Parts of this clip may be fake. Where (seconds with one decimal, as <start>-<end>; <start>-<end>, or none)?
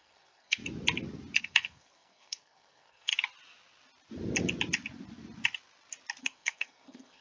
0.0-0.6; 1.4-3.1; 6.2-7.2